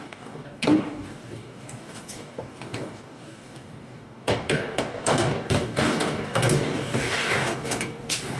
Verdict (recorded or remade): remade